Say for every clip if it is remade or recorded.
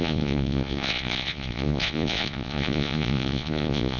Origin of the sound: remade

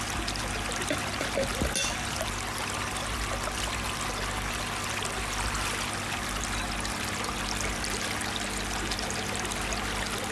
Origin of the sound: recorded